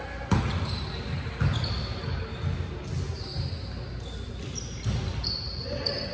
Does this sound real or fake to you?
real